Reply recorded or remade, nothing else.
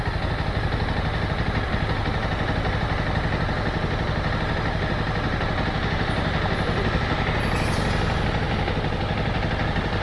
recorded